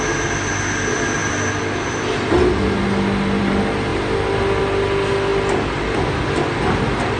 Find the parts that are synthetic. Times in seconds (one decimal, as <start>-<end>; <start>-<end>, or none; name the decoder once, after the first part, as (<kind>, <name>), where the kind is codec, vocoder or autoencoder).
none